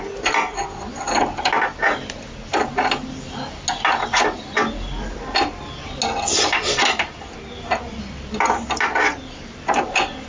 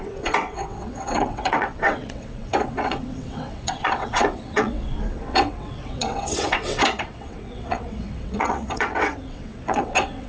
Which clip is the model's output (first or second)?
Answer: second